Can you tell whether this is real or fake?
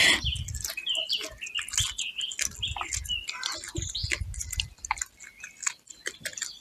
real